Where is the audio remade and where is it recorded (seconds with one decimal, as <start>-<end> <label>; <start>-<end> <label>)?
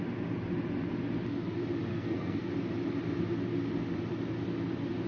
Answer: 0.0-1.9 recorded; 1.9-2.5 remade; 2.5-5.1 recorded